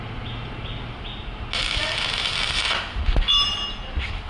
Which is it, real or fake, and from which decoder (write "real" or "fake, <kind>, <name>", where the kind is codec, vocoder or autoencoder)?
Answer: real